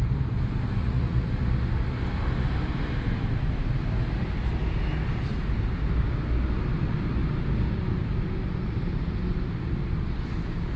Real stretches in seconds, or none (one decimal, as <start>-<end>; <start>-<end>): 0.0-0.8; 1.3-10.8